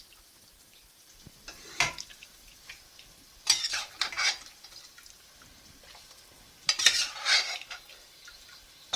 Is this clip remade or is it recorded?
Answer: remade